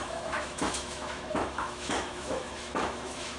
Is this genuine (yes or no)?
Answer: no